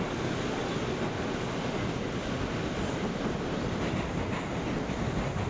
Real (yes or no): yes